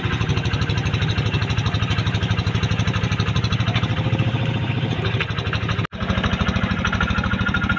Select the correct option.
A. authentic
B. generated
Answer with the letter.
A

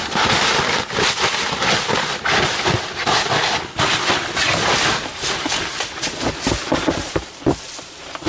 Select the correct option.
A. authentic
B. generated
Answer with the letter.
B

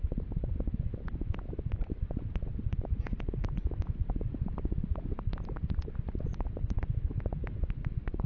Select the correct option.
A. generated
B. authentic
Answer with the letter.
A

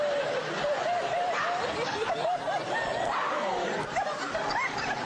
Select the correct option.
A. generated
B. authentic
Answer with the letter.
B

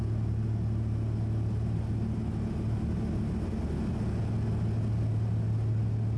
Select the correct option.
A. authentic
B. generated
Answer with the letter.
A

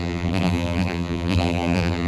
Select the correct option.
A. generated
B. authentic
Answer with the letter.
A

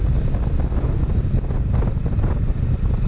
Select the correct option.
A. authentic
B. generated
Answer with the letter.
A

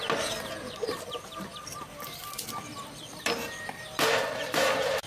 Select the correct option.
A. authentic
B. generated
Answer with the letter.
B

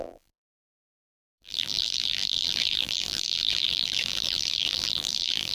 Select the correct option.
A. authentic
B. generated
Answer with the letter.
B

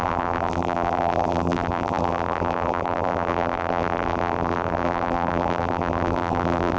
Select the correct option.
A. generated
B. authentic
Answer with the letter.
A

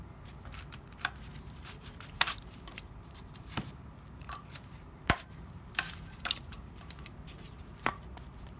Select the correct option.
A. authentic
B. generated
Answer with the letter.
B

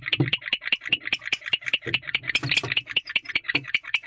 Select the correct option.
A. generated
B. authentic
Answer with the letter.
A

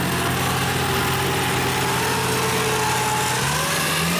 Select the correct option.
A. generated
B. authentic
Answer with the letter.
B